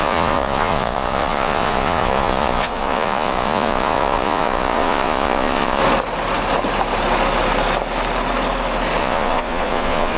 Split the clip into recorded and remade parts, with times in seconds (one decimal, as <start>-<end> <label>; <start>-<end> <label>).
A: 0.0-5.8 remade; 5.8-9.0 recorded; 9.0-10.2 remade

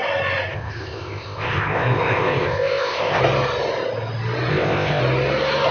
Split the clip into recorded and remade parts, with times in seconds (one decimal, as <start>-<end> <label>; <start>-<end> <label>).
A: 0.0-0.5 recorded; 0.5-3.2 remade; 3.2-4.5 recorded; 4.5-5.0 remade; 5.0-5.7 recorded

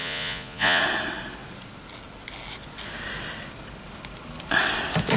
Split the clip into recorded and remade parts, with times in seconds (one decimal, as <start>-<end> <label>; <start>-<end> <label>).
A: 0.0-0.8 remade; 0.8-5.2 recorded

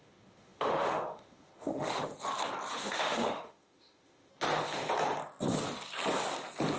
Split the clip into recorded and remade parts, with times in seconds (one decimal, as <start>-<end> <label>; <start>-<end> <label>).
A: 0.0-2.1 remade; 2.1-2.7 recorded; 2.7-4.3 remade; 4.3-6.8 recorded

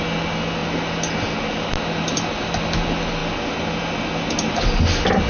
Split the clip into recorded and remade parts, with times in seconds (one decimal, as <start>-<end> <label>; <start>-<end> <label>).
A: 0.0-5.3 recorded